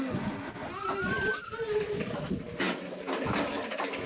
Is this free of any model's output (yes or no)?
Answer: yes